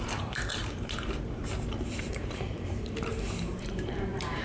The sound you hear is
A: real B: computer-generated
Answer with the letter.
B